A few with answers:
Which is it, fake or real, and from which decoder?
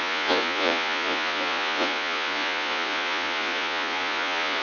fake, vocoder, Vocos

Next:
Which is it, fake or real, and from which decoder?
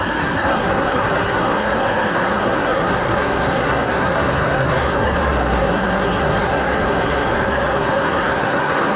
fake, codec, SNAC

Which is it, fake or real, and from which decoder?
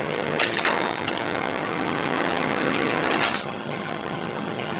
fake, vocoder, HiFi-GAN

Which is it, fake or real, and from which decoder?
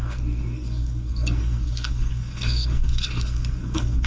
fake, codec, SNAC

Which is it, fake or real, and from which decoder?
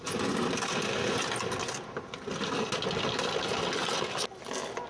real